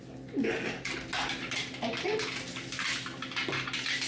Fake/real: real